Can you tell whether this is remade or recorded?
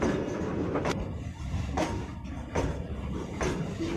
recorded